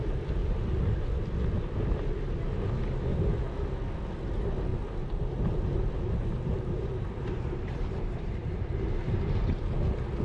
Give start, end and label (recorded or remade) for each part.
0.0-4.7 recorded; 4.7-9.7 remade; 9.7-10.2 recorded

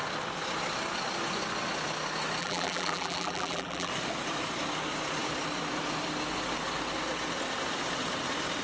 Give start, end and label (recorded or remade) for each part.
0.0-2.4 recorded; 2.4-3.9 remade; 3.9-8.6 recorded

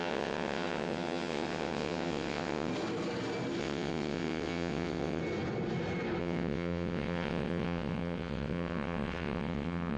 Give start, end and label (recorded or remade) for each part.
0.0-2.7 remade; 2.7-3.6 recorded; 3.6-5.2 remade; 5.2-6.2 recorded; 6.2-10.0 remade

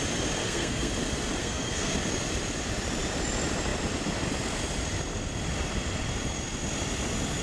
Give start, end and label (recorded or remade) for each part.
0.0-0.4 recorded; 0.4-0.9 remade; 0.9-1.4 recorded; 1.4-1.9 remade; 1.9-7.4 recorded

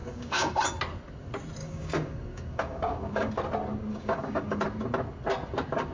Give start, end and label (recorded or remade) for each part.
0.0-0.5 remade; 0.5-1.6 recorded; 1.6-3.3 remade; 3.3-3.9 recorded; 3.9-4.6 remade; 4.6-5.9 recorded

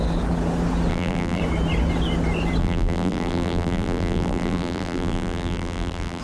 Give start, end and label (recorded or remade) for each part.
0.0-0.9 recorded; 0.9-1.4 remade; 1.4-2.6 recorded; 2.6-6.2 remade